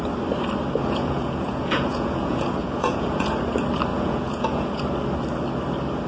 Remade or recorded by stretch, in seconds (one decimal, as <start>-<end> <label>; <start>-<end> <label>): 0.0-0.8 recorded; 0.8-3.3 remade; 3.3-3.9 recorded; 3.9-4.8 remade; 4.8-6.1 recorded